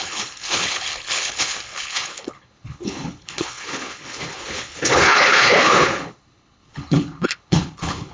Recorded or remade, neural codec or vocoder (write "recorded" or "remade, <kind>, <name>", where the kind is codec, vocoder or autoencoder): remade, codec, HILCodec